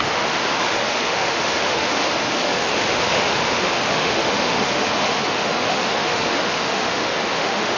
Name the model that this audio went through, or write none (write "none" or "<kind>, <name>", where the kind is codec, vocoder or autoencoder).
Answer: autoencoder, DAC-VAE